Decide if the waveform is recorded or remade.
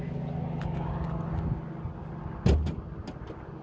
recorded